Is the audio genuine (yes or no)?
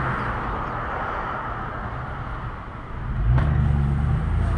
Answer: yes